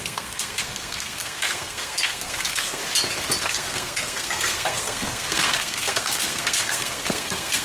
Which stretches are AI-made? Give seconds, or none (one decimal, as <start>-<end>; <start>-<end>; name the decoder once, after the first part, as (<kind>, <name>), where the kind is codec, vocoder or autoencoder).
0.0-2.8 (codec, SNAC); 3.4-7.6